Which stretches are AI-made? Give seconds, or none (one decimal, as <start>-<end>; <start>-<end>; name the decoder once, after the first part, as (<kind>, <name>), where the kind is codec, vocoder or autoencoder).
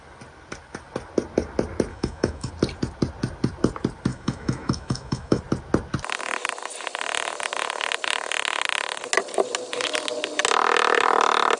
1.9-2.5 (autoencoder, DAC-VAE); 4.1-5.4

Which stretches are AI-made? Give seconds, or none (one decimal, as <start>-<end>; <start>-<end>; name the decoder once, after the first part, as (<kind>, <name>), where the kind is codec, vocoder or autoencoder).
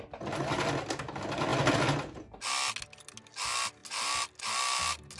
none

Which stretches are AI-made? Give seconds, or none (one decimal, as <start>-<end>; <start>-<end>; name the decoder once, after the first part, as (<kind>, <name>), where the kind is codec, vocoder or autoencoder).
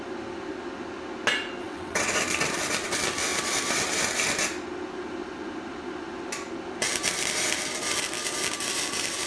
1.6-2.1 (vocoder, WaveNeXt)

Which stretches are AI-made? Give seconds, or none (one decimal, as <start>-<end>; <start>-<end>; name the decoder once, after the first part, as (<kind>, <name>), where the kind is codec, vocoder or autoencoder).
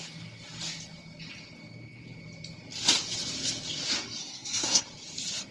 4.2-4.8 (codec, SNAC)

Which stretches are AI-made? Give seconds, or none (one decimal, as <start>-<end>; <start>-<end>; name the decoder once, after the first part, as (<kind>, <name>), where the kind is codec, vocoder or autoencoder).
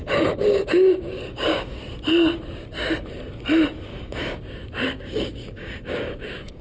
0.0-1.8 (codec, DAC); 3.9-6.6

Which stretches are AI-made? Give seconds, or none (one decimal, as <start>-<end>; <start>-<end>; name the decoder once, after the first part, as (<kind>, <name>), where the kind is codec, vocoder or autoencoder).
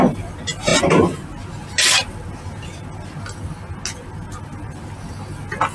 none